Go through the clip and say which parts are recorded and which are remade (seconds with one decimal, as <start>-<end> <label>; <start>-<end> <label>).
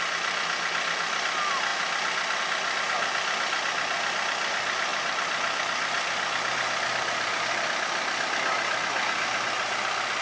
0.0-10.2 recorded